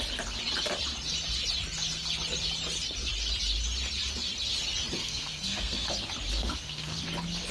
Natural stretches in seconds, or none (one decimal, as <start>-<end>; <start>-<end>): 0.0-5.0; 5.9-6.4; 7.0-7.5